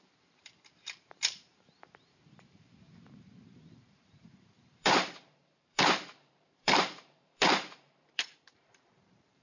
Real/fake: fake